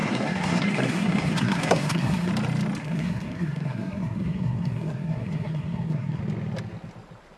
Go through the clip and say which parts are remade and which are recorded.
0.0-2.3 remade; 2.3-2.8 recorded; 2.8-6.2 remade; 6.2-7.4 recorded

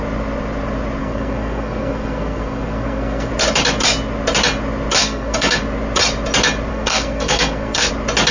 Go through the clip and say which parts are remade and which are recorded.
0.0-1.0 recorded; 1.0-3.3 remade; 3.3-5.0 recorded; 5.0-5.6 remade; 5.6-6.7 recorded; 6.7-7.9 remade; 7.9-8.3 recorded

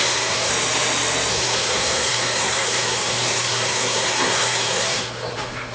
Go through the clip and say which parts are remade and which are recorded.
0.0-0.5 remade; 0.5-1.3 recorded; 1.3-5.7 remade

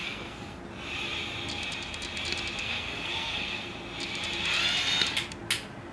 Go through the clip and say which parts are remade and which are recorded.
0.0-0.6 remade; 0.6-2.6 recorded; 2.6-3.7 remade; 3.7-5.9 recorded

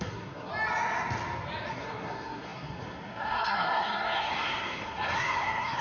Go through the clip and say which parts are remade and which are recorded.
0.0-0.5 remade; 0.5-1.7 recorded; 1.7-5.8 remade

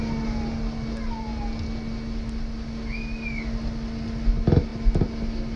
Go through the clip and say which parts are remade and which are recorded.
0.0-5.6 recorded